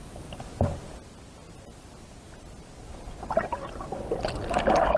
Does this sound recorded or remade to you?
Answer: recorded